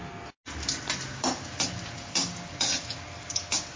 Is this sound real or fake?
real